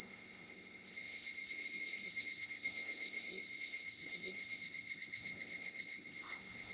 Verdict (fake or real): fake